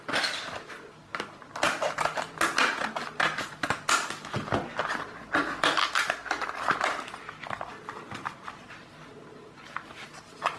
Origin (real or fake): real